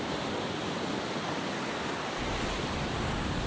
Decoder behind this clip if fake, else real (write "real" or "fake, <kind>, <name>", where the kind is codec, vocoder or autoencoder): real